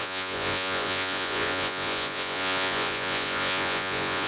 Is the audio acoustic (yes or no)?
no